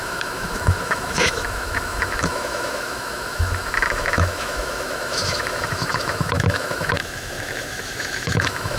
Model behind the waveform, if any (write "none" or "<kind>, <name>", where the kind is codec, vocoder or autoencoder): autoencoder, DAC-VAE